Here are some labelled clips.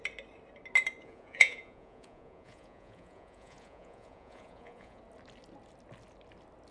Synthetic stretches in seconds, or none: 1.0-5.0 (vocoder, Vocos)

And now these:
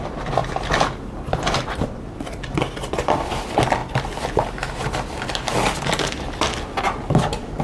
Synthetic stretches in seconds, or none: 0.4-3.3 (vocoder, BigVGAN v2)

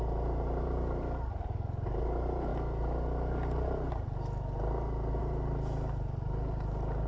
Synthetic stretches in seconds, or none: 0.0-2.5 (vocoder, BigVGAN v2); 5.2-7.1